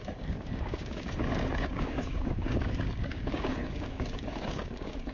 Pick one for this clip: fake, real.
fake